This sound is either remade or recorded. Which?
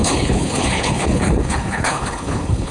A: remade